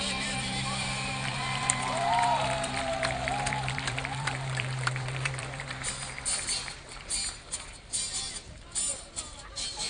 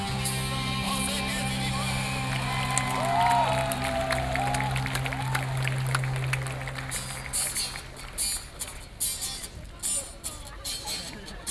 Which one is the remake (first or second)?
first